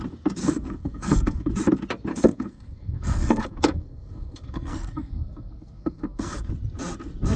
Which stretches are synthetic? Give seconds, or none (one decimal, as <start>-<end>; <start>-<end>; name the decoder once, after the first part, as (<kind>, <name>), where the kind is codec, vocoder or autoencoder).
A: 0.4-1.5 (codec, SNAC); 2.1-6.5